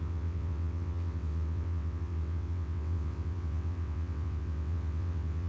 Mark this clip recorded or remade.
remade